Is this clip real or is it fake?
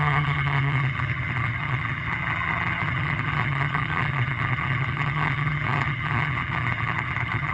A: fake